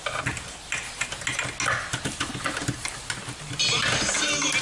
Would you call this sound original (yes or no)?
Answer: yes